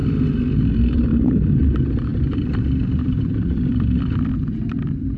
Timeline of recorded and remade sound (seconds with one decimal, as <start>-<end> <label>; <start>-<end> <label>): 0.0-1.4 remade; 1.4-2.1 recorded; 2.1-5.2 remade